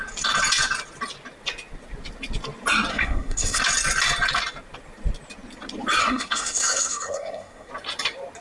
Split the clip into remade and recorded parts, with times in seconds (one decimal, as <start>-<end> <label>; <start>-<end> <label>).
0.0-2.9 recorded; 2.9-3.6 remade; 3.6-6.0 recorded; 6.0-7.7 remade; 7.7-8.4 recorded